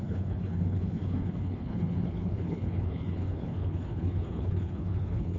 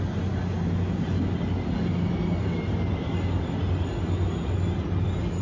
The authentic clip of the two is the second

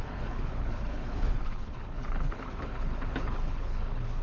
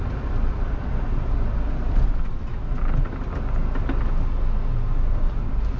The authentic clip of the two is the second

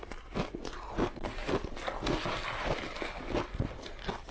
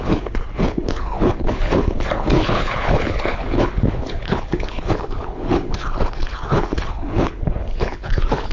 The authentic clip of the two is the first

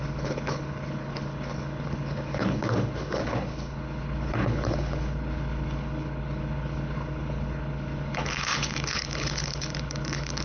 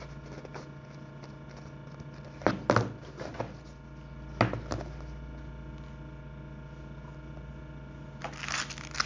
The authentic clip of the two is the second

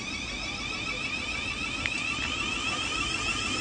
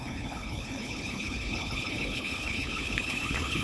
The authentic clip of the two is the first